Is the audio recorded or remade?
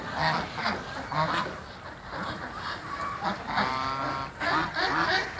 recorded